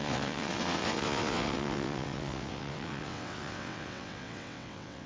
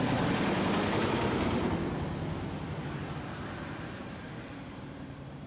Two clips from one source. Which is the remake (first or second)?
first